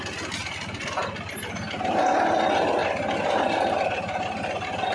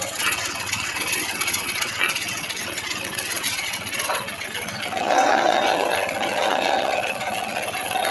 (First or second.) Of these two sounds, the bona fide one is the first